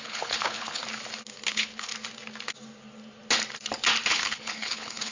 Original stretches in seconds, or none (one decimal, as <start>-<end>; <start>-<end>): 0.8-1.5; 1.9-4.1